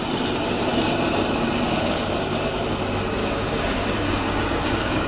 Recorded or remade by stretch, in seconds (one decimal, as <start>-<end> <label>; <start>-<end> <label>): 0.0-3.2 recorded; 3.2-5.1 remade